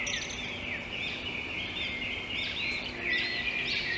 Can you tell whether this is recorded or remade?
recorded